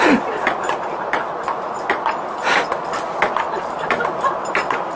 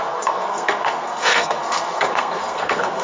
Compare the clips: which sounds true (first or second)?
first